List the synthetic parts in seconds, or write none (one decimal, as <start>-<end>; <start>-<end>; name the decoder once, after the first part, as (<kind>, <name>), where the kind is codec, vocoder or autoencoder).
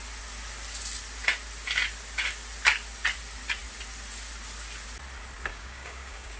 5.5-6.4 (codec, DAC)